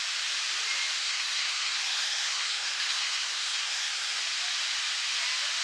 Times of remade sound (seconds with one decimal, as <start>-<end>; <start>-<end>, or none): 1.0-4.2